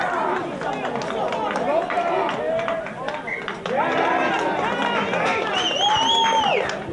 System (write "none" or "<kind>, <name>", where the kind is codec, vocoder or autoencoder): none